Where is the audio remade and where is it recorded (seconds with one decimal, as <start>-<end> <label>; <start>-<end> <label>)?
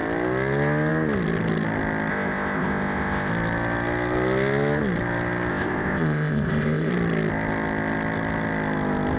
0.0-2.1 recorded; 2.1-3.3 remade; 3.3-5.5 recorded; 5.5-6.9 remade; 6.9-9.2 recorded